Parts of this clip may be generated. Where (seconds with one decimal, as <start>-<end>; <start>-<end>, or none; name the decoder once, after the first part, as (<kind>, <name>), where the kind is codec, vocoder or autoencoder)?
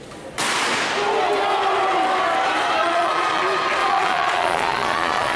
2.8-3.4 (vocoder, Vocos); 3.8-5.4